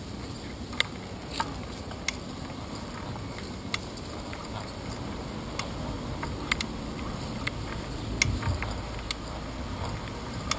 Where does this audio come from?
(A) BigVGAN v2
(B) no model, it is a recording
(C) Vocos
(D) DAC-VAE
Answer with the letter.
B